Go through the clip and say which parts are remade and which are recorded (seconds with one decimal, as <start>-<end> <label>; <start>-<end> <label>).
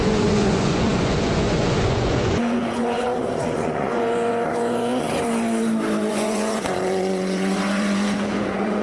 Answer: 0.0-4.9 remade; 4.9-6.1 recorded; 6.1-8.8 remade